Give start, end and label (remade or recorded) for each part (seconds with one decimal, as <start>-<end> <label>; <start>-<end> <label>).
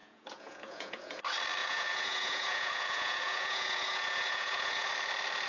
0.0-1.2 remade; 1.2-1.6 recorded; 1.6-4.9 remade; 4.9-5.5 recorded